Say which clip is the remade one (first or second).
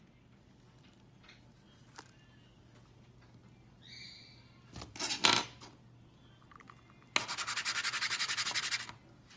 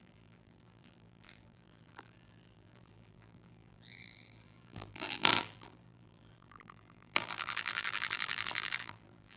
second